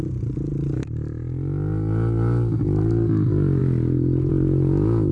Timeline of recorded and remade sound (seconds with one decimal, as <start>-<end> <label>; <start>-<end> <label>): 0.0-5.1 recorded